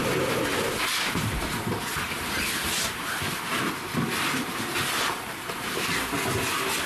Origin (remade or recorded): recorded